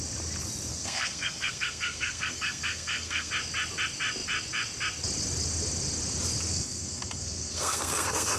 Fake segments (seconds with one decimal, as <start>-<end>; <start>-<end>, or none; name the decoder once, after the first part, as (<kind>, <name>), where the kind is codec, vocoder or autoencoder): 0.7-3.3 (codec, SNAC); 6.5-8.4